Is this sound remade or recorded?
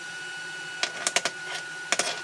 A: recorded